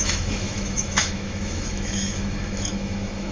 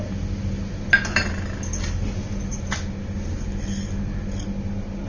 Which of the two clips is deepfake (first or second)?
first